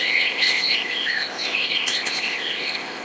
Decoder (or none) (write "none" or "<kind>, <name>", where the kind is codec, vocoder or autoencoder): codec, ZipCodec